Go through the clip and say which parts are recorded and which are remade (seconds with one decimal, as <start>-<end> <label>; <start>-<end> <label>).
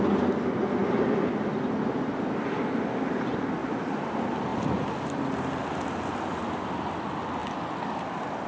0.0-8.5 recorded